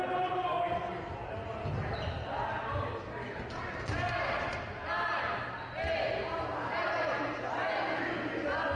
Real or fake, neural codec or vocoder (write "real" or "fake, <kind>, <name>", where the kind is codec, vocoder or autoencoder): real